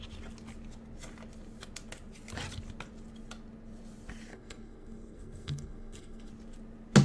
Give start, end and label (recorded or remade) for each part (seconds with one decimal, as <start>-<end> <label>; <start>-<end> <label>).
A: 0.0-4.3 recorded; 4.3-6.3 remade; 6.3-7.0 recorded